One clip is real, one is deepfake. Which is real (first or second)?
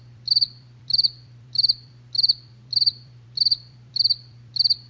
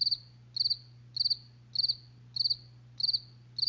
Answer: second